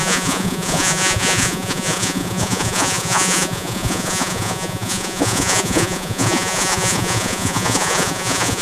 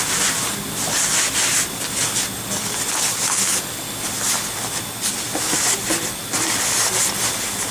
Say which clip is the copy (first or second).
first